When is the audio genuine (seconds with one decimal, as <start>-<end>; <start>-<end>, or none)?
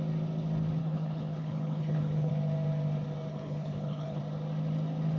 0.0-0.8; 2.3-3.3; 4.2-5.2